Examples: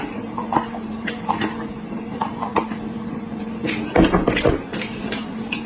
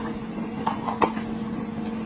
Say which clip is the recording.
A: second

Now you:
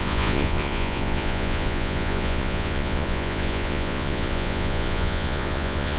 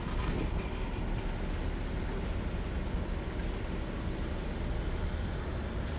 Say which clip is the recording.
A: second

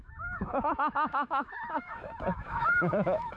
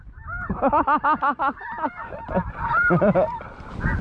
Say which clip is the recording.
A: second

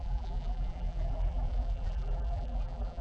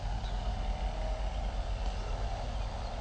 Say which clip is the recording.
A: second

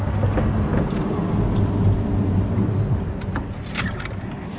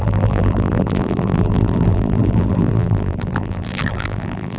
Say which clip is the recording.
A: first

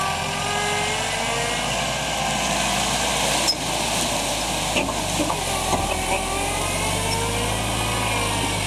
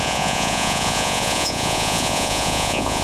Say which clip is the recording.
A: first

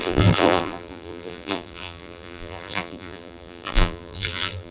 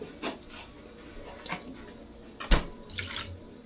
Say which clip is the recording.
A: second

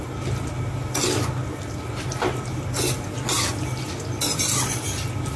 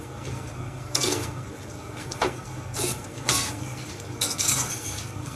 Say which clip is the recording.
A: first